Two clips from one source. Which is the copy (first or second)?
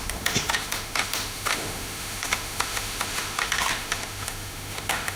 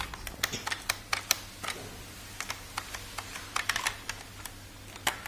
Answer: first